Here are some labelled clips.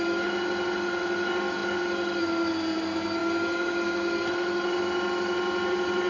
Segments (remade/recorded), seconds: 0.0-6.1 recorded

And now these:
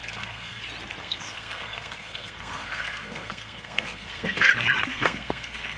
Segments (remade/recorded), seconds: 0.0-0.6 remade; 0.6-1.0 recorded; 1.0-4.5 remade; 4.5-4.9 recorded; 4.9-5.8 remade